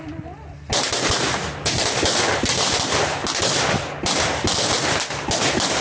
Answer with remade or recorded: recorded